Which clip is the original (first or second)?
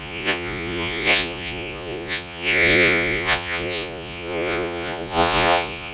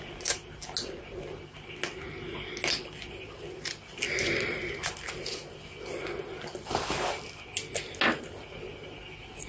second